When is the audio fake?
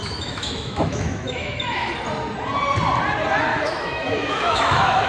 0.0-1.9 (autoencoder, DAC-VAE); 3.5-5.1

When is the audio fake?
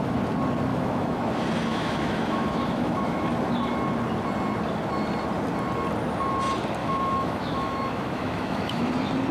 0.7-1.2 (autoencoder, DAC-VAE); 1.7-3.3; 6.8-8.9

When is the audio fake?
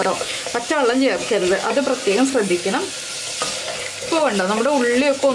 0.0-1.4 (autoencoder, DAC-VAE); 4.6-5.3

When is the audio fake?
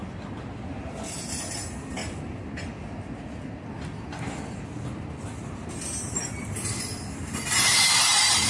none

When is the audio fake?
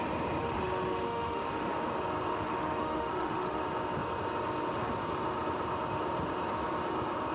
0.4-1.7 (autoencoder, DAC-VAE); 2.3-3.6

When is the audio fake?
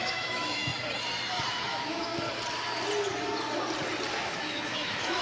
0.0-0.7 (autoencoder, DAC-VAE); 1.5-2.1; 4.1-5.2